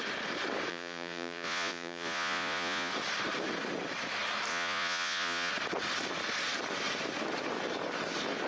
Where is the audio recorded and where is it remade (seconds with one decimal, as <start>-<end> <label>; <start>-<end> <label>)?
0.0-0.7 recorded; 0.7-2.9 remade; 2.9-4.5 recorded; 4.5-5.5 remade; 5.5-8.5 recorded